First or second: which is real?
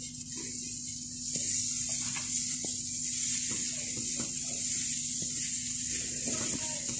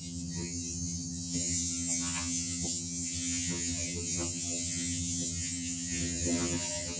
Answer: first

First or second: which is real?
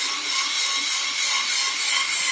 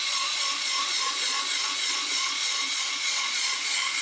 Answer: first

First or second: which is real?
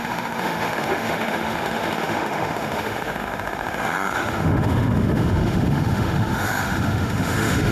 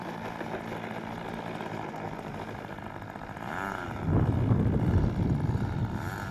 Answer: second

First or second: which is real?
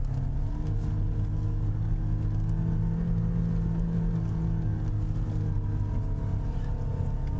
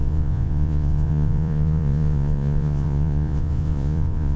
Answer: first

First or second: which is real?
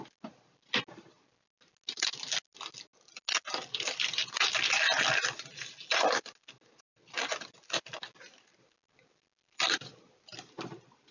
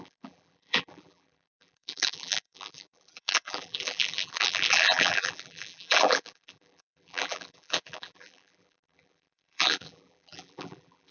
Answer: first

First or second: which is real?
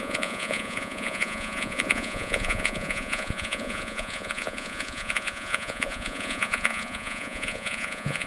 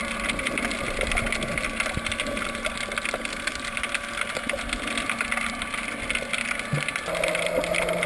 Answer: second